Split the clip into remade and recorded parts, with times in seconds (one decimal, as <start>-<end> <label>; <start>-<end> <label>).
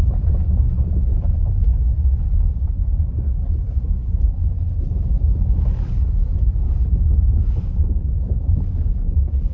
0.0-1.7 remade; 1.7-2.8 recorded; 2.8-4.4 remade; 4.4-5.8 recorded; 5.8-9.5 remade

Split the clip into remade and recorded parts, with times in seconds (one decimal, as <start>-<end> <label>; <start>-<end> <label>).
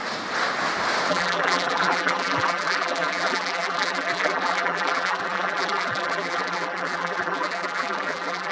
0.0-1.1 recorded; 1.1-8.5 remade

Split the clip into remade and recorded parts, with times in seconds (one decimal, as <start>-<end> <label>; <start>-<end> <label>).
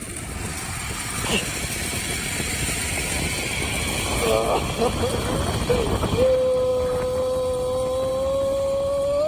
0.0-9.3 recorded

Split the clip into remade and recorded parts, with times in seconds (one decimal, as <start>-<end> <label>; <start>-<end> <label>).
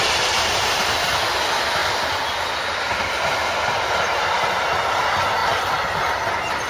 0.0-1.8 recorded; 1.8-4.5 remade; 4.5-6.7 recorded